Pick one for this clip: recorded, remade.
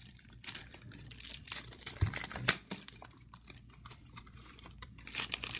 remade